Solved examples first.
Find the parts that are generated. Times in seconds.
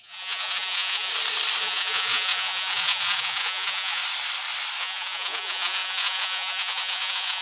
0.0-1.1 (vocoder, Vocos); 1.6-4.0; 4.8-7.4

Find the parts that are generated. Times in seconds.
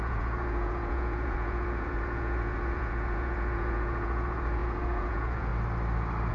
0.0-5.5 (vocoder, Vocos)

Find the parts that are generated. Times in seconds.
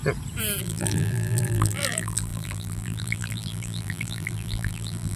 0.6-5.2 (vocoder, BigVGAN v2)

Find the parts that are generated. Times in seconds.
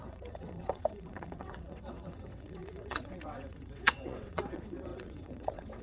0.0-5.8 (vocoder, WaveNeXt)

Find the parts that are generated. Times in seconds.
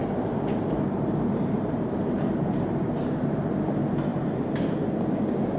0.0-3.4 (vocoder, BigVGAN v2); 4.1-4.8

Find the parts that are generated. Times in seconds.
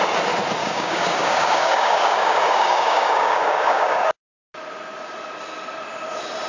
0.6-4.5 (codec, DAC)